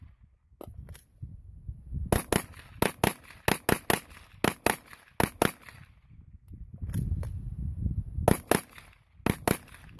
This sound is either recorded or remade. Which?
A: recorded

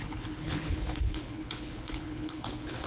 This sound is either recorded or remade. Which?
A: remade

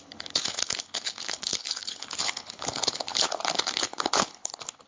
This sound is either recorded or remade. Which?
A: remade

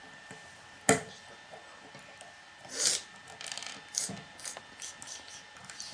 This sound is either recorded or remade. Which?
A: recorded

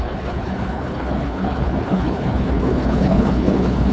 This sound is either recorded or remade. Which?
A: remade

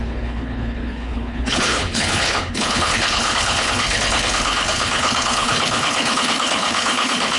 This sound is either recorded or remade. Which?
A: remade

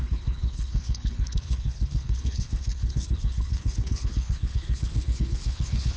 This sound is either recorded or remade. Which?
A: remade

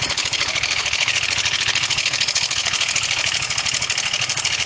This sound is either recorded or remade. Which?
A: remade